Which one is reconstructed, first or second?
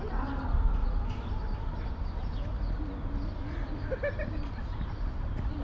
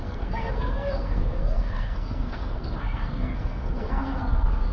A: second